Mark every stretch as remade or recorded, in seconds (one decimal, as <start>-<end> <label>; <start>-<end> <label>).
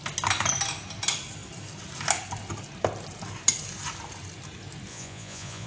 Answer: 0.0-4.9 recorded; 4.9-5.7 remade